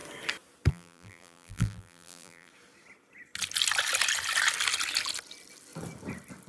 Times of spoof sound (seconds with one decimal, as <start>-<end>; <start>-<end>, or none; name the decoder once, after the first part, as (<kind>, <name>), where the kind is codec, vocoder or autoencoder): 0.7-2.5 (vocoder, BigVGAN v2)